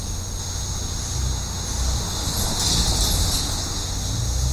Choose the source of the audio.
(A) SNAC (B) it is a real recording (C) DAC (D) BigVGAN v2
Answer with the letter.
B